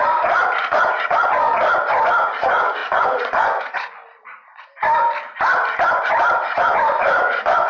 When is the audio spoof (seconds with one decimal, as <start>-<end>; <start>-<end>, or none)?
0.0-1.5; 2.4-4.0; 6.6-7.7